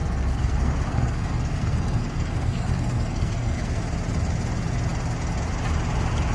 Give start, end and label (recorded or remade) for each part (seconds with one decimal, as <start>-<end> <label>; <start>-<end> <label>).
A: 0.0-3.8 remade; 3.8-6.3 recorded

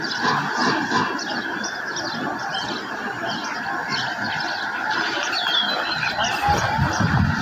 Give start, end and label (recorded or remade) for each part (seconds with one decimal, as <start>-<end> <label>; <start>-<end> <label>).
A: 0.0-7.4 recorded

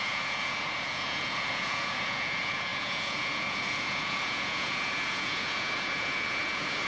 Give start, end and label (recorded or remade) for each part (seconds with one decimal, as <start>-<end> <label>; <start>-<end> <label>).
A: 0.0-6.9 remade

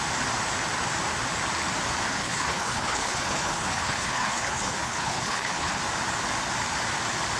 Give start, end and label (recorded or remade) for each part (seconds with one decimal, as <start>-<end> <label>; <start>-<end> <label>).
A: 0.0-2.1 recorded; 2.1-5.8 remade; 5.8-7.4 recorded